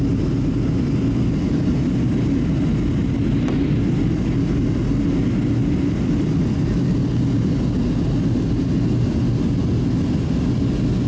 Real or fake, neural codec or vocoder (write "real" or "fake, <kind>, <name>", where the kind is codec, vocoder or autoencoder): real